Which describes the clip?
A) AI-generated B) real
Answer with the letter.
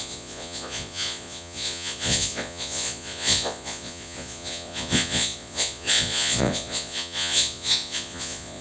A